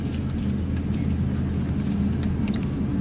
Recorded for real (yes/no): yes